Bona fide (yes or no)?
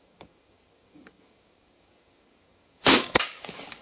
no